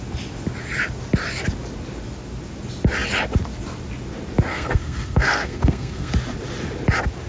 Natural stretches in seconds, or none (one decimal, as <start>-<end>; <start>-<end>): 0.0-4.5; 6.1-7.3